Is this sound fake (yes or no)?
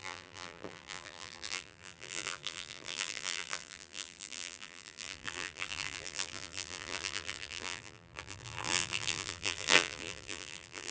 yes